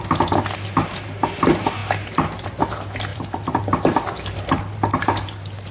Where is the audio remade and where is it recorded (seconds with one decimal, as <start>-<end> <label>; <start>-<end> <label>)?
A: 0.0-3.1 recorded; 3.1-4.2 remade; 4.2-5.7 recorded

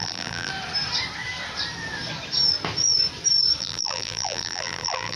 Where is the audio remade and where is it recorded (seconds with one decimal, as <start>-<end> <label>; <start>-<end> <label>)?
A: 0.0-0.5 remade; 0.5-3.6 recorded; 3.6-5.2 remade

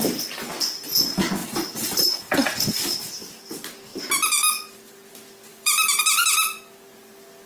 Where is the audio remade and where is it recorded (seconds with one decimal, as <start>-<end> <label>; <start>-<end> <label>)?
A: 0.0-1.4 recorded; 1.4-2.2 remade; 2.2-5.5 recorded; 5.5-6.2 remade; 6.2-7.5 recorded

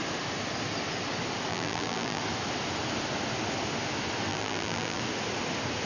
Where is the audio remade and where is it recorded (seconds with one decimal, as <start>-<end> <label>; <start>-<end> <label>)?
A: 0.0-1.5 recorded; 1.5-2.2 remade; 2.2-4.3 recorded; 4.3-5.0 remade; 5.0-5.9 recorded

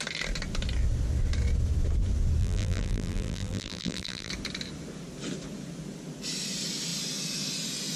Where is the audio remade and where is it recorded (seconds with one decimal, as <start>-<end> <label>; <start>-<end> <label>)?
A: 0.0-2.4 recorded; 2.4-4.3 remade; 4.3-8.0 recorded

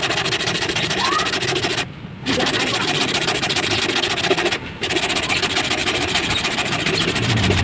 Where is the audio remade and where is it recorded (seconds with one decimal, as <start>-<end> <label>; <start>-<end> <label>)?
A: 0.0-0.4 recorded; 0.4-1.1 remade; 1.1-2.2 recorded; 2.2-3.8 remade; 3.8-5.8 recorded; 5.8-7.6 remade

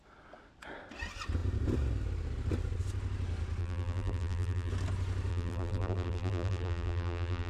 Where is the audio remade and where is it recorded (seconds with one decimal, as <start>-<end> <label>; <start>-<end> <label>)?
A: 0.0-3.6 recorded; 3.6-4.7 remade; 4.7-5.3 recorded; 5.3-7.5 remade

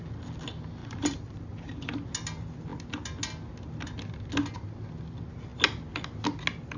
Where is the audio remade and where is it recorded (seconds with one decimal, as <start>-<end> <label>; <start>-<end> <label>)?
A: 0.0-0.8 recorded; 0.8-1.9 remade; 1.9-6.8 recorded